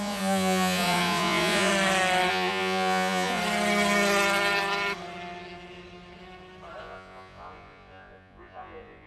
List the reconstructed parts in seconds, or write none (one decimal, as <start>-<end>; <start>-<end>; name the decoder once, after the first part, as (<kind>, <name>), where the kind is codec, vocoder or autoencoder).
0.0-1.7 (vocoder, Vocos); 2.3-3.4; 6.8-9.1